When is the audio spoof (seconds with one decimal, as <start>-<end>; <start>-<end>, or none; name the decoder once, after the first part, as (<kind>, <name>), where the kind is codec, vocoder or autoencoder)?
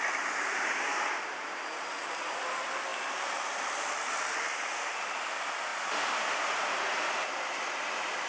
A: 0.0-2.9 (vocoder, BigVGAN v2); 4.7-5.7; 6.5-8.3